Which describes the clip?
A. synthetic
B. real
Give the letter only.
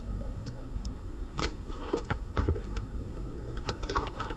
A